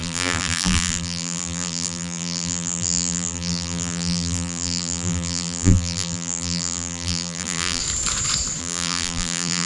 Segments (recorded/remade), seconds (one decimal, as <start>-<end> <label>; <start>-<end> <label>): 0.0-7.8 remade; 7.8-8.6 recorded; 8.6-9.7 remade

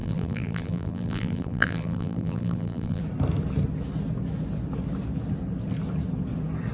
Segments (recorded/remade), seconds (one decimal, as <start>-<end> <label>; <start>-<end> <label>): 0.0-3.0 remade; 3.0-6.7 recorded

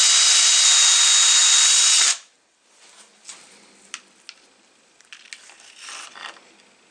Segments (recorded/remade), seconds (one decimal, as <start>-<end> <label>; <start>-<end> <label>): 0.0-6.9 recorded